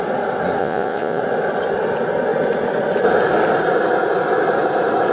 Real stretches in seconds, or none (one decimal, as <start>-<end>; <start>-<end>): 0.0-0.6; 1.2-5.1